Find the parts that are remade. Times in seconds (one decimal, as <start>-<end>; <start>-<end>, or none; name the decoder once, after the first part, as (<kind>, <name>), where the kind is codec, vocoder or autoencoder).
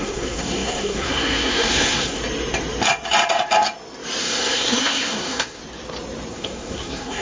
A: 0.0-2.2 (codec, SNAC); 4.2-5.6; 6.3-7.2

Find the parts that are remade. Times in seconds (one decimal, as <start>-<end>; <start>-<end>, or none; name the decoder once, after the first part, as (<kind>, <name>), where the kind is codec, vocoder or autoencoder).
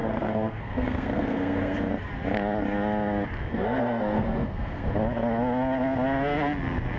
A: 0.0-1.9 (codec, SNAC); 3.5-4.9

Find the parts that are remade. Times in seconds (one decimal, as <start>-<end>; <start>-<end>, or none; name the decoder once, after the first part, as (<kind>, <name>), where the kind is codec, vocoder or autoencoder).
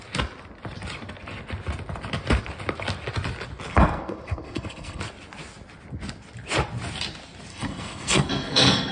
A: 3.7-5.0 (codec, SNAC); 7.5-8.9